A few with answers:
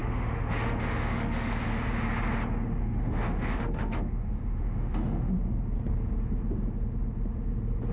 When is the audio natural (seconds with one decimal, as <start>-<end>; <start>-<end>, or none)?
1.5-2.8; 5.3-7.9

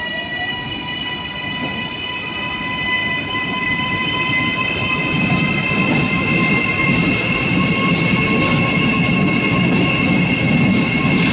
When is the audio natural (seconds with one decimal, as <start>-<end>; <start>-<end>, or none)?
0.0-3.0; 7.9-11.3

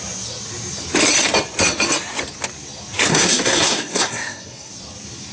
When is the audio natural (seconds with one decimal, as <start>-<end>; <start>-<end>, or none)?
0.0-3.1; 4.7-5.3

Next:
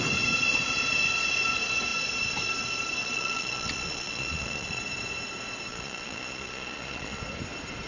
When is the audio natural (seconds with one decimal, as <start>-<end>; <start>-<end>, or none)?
0.0-3.0; 4.8-5.7; 7.2-7.9

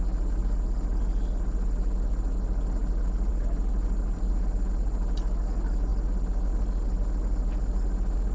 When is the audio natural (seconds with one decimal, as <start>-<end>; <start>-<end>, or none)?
0.0-8.3

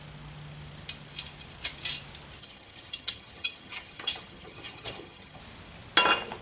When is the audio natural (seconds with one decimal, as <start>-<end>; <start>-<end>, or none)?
0.0-2.4; 5.4-6.4